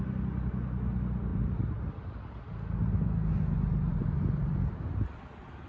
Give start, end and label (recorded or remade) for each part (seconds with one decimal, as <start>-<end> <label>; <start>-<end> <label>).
0.0-5.7 recorded